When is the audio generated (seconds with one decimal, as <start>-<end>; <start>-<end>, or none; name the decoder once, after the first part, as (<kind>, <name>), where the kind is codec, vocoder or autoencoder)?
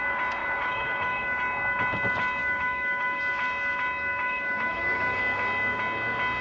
0.4-1.4 (autoencoder, DAC-VAE); 2.4-3.2; 4.2-5.2